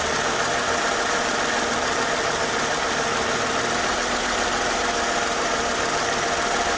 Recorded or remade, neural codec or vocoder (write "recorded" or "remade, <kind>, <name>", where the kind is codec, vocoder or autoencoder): recorded